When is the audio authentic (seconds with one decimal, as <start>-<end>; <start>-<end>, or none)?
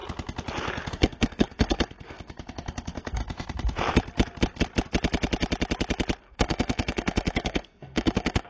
0.0-0.9; 3.2-6.2